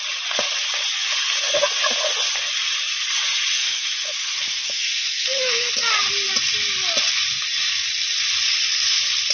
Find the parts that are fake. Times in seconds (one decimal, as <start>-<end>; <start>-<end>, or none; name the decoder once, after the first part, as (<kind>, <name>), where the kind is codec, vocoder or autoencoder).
3.6-5.7 (autoencoder, DAC-VAE)